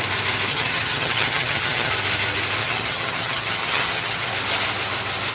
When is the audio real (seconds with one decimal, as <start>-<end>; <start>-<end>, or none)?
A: 0.0-0.5; 1.9-2.6; 4.3-5.3